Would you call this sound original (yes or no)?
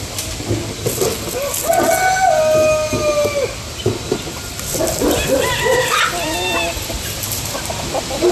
yes